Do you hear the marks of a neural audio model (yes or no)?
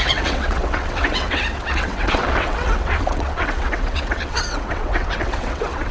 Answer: yes